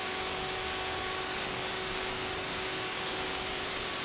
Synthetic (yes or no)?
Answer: yes